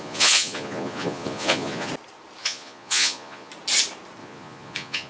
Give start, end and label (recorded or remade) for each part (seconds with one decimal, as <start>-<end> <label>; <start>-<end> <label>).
0.0-1.9 remade; 1.9-2.4 recorded; 2.4-3.5 remade; 3.5-4.2 recorded; 4.2-5.1 remade